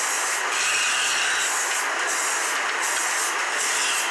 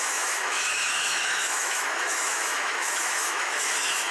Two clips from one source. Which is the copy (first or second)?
second